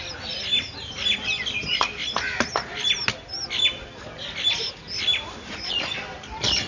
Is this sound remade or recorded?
recorded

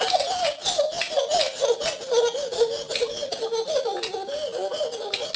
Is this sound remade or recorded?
recorded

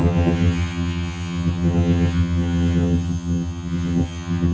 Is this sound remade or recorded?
remade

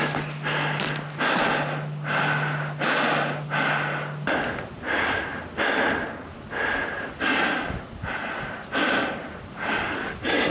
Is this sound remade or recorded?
recorded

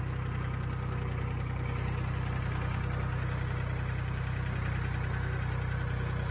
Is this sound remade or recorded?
recorded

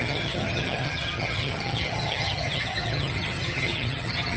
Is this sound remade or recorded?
remade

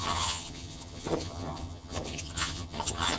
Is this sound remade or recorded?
remade